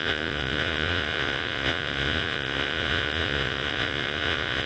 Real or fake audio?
fake